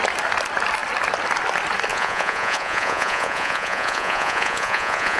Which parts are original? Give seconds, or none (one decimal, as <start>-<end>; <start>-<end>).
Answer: 0.0-1.9